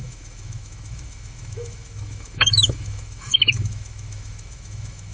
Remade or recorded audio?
remade